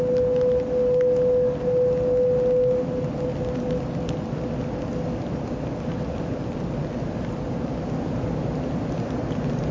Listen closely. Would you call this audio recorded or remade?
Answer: recorded